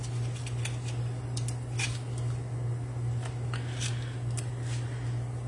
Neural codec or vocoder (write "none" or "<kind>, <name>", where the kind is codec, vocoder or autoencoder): none